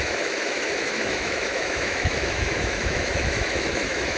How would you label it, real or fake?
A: fake